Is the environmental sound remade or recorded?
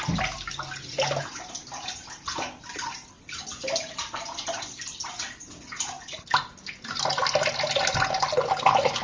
recorded